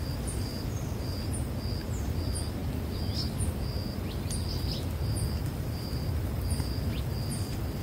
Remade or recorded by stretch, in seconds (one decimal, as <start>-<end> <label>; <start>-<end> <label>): 0.0-5.4 recorded; 5.4-5.9 remade; 5.9-7.8 recorded